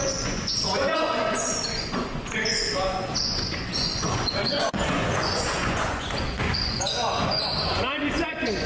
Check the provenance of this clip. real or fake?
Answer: fake